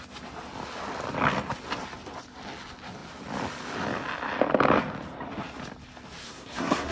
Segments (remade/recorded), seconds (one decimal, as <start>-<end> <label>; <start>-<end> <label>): 0.0-6.2 recorded; 6.2-6.9 remade